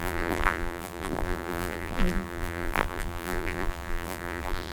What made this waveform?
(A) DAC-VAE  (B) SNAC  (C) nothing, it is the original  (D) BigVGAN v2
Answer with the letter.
D